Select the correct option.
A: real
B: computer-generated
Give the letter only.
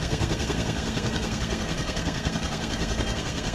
B